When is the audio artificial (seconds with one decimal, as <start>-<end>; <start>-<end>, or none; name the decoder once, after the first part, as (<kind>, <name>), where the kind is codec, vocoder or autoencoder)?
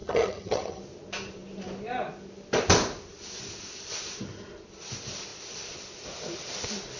0.0-0.8 (vocoder, HiFi-GAN)